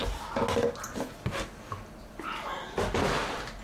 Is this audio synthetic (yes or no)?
no